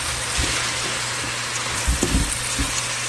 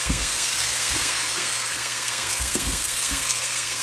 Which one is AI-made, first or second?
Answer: second